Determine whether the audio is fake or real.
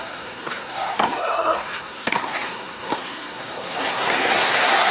fake